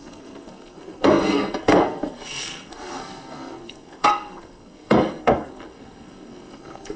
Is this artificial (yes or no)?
yes